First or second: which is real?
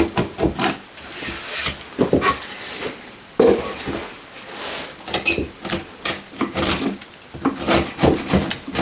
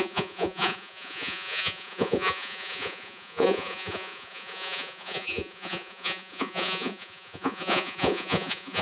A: first